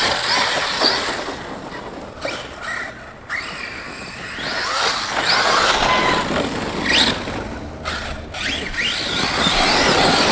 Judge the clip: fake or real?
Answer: real